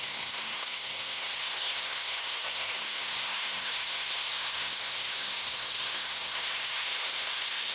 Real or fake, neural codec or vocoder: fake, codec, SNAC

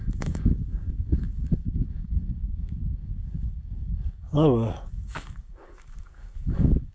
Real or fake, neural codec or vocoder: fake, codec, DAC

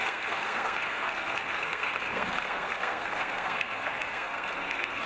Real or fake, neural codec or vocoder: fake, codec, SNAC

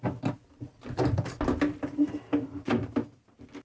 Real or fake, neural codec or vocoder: real